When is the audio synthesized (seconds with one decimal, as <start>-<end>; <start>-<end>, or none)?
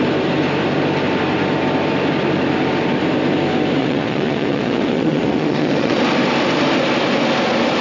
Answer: 3.8-6.0